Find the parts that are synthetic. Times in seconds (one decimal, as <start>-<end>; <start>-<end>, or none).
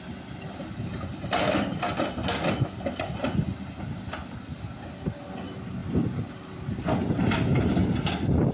none